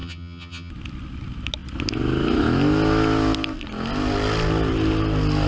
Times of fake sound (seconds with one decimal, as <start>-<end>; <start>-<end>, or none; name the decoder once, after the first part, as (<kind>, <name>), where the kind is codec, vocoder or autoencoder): 0.0-0.7 (vocoder, HiFi-GAN)